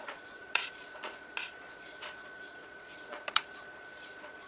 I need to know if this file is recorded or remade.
remade